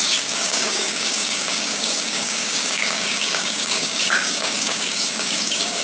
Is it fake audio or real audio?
fake